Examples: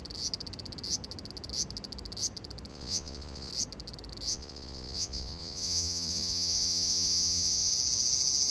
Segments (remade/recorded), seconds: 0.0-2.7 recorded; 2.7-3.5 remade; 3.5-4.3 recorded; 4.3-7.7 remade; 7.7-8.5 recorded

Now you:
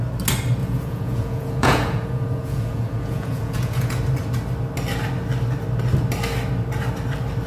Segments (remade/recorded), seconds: 0.0-0.6 recorded; 0.6-4.0 remade; 4.0-7.5 recorded

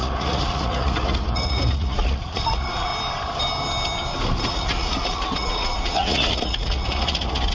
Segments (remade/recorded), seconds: 0.0-2.9 remade; 2.9-4.5 recorded; 4.5-7.5 remade

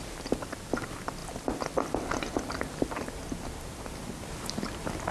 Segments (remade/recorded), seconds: 0.0-5.1 recorded

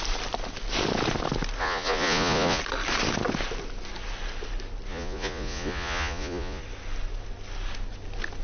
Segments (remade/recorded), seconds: 0.0-1.6 recorded; 1.6-2.6 remade; 2.6-4.9 recorded; 4.9-6.6 remade; 6.6-8.4 recorded